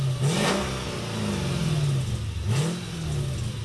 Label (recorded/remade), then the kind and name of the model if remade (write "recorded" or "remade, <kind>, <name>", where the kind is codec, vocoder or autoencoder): recorded